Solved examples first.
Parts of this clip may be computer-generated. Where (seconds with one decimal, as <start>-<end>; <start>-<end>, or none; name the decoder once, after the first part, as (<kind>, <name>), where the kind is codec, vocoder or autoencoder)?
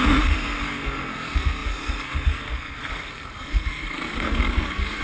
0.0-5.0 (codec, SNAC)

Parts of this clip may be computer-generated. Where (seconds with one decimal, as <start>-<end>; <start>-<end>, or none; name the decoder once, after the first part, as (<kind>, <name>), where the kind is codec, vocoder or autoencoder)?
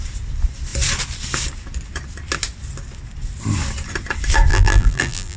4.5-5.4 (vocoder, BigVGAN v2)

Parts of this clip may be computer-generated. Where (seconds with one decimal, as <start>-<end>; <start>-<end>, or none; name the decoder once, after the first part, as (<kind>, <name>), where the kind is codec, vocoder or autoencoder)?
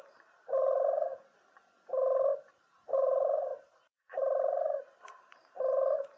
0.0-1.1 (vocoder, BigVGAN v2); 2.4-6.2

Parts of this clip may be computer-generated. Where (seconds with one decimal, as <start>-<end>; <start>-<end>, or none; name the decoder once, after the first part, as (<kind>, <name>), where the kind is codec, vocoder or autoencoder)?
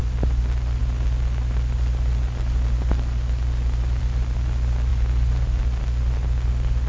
none